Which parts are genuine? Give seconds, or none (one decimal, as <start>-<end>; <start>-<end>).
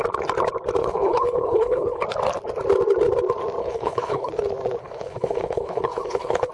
0.0-0.8; 2.0-3.6; 4.3-4.8